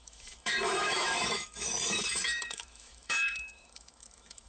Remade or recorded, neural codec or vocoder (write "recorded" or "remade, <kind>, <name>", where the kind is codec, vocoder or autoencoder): remade, autoencoder, DAC-VAE